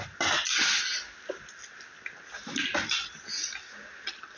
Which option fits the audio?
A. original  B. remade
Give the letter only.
A